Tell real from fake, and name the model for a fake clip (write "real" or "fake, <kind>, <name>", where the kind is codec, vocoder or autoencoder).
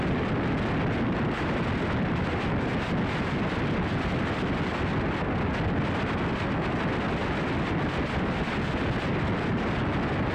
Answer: real